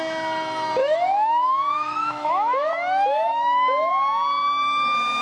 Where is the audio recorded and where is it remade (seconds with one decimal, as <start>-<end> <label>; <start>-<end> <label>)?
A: 0.0-0.8 recorded; 0.8-3.9 remade; 3.9-5.2 recorded